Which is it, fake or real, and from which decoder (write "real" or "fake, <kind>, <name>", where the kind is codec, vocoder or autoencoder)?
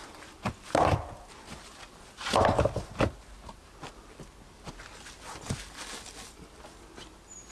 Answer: real